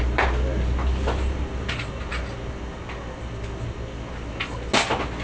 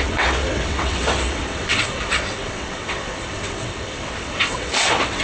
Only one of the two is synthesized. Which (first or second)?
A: second